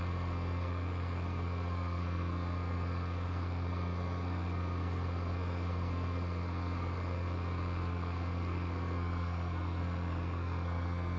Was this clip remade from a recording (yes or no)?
yes